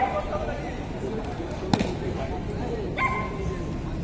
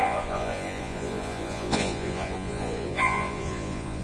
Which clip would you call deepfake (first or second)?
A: second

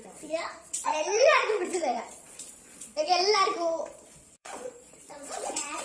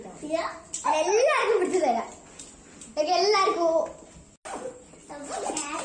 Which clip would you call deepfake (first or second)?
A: first